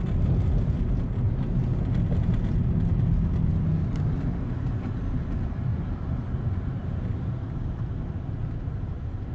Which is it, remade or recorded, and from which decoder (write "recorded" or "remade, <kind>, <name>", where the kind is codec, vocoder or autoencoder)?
recorded